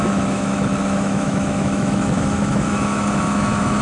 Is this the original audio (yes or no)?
no